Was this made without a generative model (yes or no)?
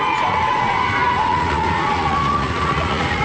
no